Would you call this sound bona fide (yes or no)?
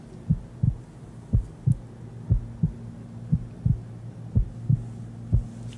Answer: yes